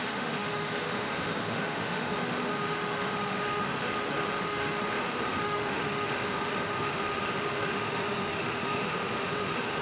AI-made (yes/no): yes